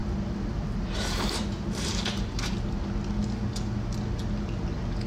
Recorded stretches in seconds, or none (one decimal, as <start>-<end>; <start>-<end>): 3.1-5.1